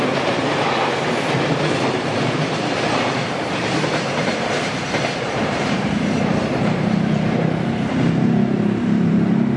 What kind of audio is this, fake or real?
fake